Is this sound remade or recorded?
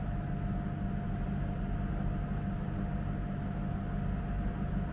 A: recorded